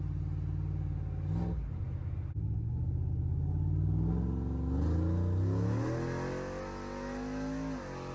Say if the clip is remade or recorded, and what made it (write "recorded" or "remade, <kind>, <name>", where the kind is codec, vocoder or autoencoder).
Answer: recorded